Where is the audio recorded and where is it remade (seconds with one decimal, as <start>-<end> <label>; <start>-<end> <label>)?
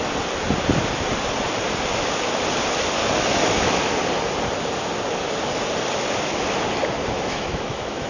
0.0-3.0 recorded; 3.0-3.8 remade; 3.8-7.0 recorded; 7.0-8.1 remade